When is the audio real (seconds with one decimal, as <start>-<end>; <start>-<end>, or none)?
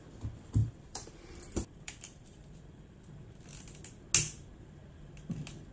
0.0-0.6; 3.1-5.7